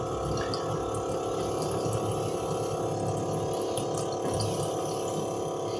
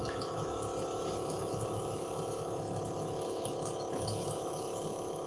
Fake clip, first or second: second